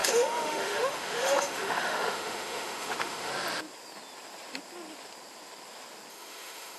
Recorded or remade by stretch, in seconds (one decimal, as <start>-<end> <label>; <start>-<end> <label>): 0.0-3.3 remade; 3.3-6.1 recorded; 6.1-6.8 remade

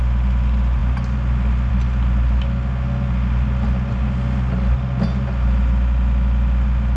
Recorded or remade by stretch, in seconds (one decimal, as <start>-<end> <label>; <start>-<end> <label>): 0.0-7.0 recorded

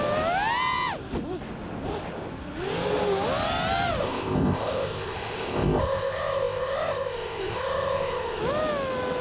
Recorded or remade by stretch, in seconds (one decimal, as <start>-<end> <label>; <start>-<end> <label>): 0.0-4.0 recorded; 4.0-8.4 remade; 8.4-9.2 recorded

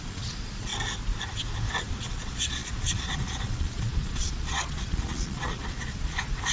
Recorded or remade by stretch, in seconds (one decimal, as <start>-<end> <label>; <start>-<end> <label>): 0.0-0.7 remade; 0.7-1.9 recorded; 1.9-6.5 remade

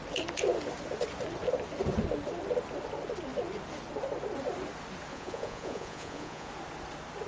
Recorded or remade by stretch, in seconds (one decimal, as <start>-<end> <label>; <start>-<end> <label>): 0.0-5.1 recorded; 5.1-6.5 remade; 6.5-7.3 recorded

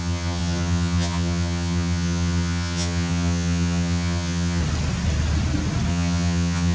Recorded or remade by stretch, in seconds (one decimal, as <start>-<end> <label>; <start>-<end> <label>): 0.0-4.6 remade; 4.6-5.9 recorded; 5.9-6.7 remade

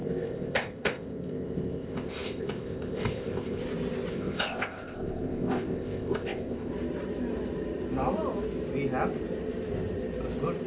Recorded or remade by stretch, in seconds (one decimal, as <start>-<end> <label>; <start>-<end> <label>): 0.0-3.6 remade; 3.6-4.1 recorded; 4.1-6.7 remade; 6.7-10.7 recorded